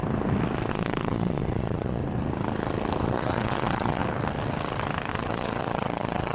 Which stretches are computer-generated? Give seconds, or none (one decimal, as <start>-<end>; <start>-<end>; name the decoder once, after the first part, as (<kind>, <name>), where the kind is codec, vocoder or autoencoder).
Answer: 0.7-2.0 (vocoder, Vocos); 3.0-4.0; 5.1-6.3